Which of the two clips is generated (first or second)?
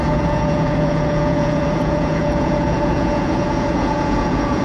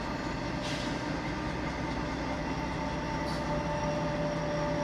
first